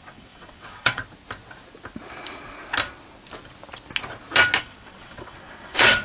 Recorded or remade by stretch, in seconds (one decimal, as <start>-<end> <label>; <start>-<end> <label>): 0.0-1.0 remade; 1.0-4.6 recorded; 4.6-6.0 remade